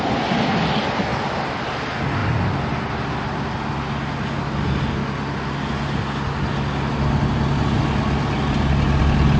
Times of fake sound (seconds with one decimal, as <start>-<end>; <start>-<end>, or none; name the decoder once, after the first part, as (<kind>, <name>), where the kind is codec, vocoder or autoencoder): none